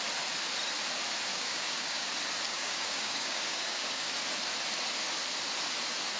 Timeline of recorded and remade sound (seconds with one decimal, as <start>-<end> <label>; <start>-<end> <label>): 0.0-1.3 recorded; 1.3-2.1 remade; 2.1-2.5 recorded; 2.5-4.1 remade; 4.1-6.2 recorded

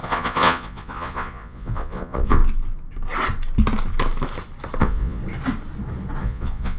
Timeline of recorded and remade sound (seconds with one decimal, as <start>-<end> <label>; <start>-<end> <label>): 0.0-2.4 remade; 2.4-4.8 recorded; 4.8-5.2 remade; 5.2-6.2 recorded; 6.2-6.8 remade

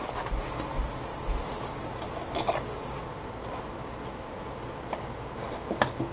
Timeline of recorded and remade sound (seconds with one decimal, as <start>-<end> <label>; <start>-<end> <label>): 0.0-6.1 recorded

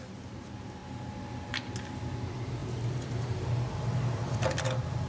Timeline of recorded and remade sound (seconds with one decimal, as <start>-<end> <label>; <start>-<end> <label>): 0.0-5.1 recorded

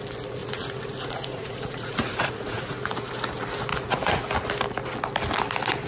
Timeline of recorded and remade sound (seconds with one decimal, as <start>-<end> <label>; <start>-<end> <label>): 0.0-0.4 recorded; 0.4-3.1 remade; 3.1-3.7 recorded; 3.7-4.2 remade; 4.2-5.9 recorded

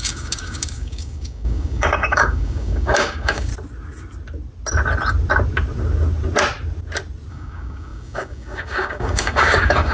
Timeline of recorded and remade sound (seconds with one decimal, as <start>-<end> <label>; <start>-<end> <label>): 0.0-3.5 remade; 3.5-7.3 recorded; 7.3-9.9 remade